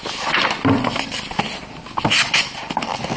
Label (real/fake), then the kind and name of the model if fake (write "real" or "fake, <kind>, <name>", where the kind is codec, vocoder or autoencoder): real